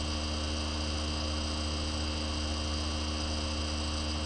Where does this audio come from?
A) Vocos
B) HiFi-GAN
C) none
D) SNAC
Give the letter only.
C